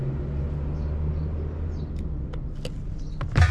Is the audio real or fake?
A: real